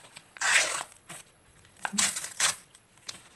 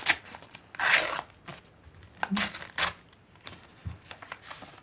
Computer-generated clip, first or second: first